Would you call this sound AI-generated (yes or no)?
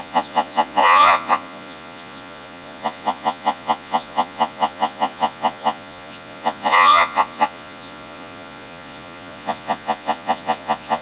yes